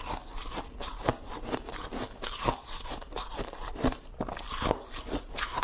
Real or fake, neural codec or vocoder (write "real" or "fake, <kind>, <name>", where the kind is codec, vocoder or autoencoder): real